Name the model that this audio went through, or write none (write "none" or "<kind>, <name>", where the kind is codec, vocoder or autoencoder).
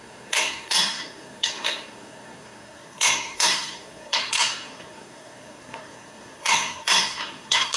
codec, SNAC